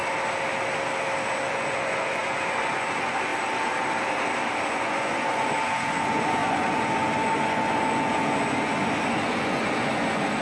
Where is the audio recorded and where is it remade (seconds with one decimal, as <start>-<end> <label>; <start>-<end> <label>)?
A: 0.0-1.5 recorded; 1.5-3.3 remade; 3.3-4.6 recorded; 4.6-10.4 remade